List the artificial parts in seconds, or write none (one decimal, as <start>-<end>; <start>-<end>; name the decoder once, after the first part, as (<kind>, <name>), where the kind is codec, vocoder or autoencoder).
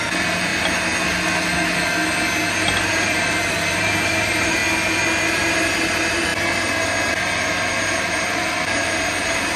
0.0-0.5 (vocoder, BigVGAN v2); 2.9-4.6; 5.5-6.3; 7.1-9.6